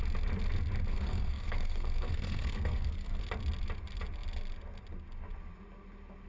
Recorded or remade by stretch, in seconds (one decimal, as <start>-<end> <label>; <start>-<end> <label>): 0.0-0.9 recorded; 0.9-3.2 remade; 3.2-6.3 recorded